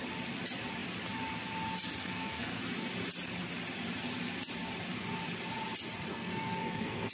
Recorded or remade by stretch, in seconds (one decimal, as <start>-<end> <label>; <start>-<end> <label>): 0.0-2.0 recorded; 2.0-2.6 remade; 2.6-6.1 recorded; 6.1-7.1 remade